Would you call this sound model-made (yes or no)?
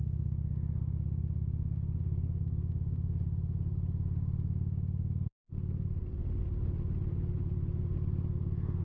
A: no